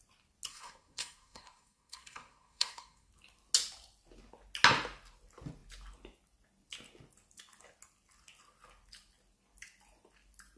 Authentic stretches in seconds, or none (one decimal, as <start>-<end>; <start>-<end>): 0.0-0.5; 3.1-10.6